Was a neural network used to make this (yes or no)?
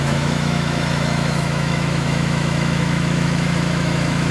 yes